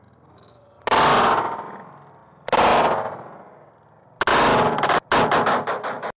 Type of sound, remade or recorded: recorded